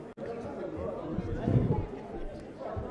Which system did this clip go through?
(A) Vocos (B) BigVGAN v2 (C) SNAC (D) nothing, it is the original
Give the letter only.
D